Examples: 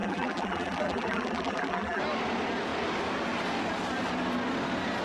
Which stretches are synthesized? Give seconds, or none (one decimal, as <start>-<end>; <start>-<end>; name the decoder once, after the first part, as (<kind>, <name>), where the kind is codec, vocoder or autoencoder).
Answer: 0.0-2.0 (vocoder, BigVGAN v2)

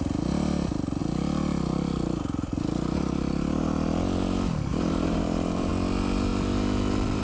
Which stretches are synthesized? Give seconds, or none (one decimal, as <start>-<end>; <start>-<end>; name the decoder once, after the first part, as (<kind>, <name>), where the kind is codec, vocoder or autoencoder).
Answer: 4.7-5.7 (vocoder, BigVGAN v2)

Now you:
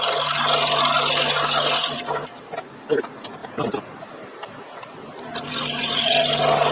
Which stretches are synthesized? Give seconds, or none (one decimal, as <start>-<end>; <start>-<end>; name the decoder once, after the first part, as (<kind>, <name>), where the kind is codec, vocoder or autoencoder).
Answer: 1.8-3.0 (vocoder, BigVGAN v2); 3.4-5.3

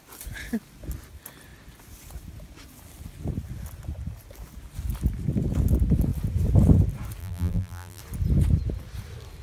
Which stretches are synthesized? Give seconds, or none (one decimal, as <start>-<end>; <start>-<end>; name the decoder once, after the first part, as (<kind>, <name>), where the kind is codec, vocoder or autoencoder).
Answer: 7.2-8.0 (vocoder, BigVGAN v2)

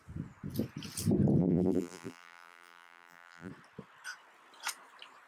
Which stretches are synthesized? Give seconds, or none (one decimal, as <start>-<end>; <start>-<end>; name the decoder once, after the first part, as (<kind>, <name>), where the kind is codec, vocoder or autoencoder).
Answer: 1.4-3.5 (vocoder, BigVGAN v2)

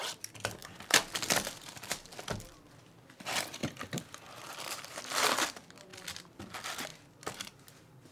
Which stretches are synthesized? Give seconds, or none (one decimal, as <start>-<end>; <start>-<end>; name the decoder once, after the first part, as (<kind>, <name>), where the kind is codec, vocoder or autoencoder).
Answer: 0.6-2.7 (vocoder, BigVGAN v2); 3.6-5.0

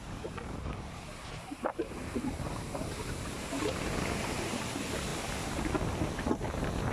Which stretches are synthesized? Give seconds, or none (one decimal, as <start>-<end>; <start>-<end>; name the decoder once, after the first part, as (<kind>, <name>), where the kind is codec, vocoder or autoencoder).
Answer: 0.0-3.9 (vocoder, BigVGAN v2)